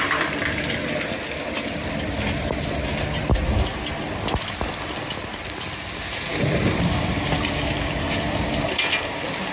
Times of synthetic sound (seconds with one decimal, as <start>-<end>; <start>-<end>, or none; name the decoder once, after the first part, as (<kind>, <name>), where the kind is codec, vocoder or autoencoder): none